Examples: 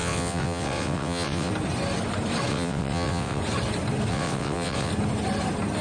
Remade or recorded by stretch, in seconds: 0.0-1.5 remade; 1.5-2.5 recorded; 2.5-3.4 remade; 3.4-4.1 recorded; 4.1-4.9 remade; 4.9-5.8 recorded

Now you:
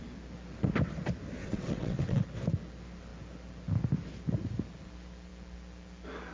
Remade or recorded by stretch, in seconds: 0.0-1.4 recorded; 1.4-2.2 remade; 2.2-6.3 recorded

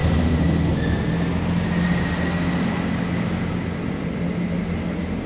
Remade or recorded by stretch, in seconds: 0.0-5.3 recorded

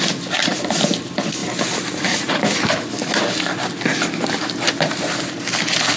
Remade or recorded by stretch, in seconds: 0.0-6.0 recorded

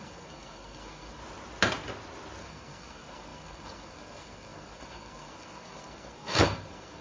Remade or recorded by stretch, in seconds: 0.0-1.2 remade; 1.2-2.4 recorded; 2.4-7.0 remade

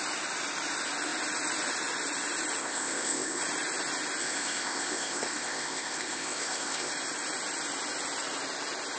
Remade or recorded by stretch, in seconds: 0.0-2.6 recorded; 2.6-3.4 remade; 3.4-4.2 recorded; 4.2-6.9 remade; 6.9-9.0 recorded

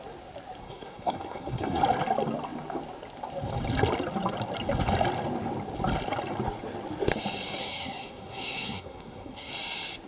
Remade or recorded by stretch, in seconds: 0.0-0.6 recorded; 0.6-1.8 remade; 1.8-7.6 recorded; 7.6-9.5 remade; 9.5-10.1 recorded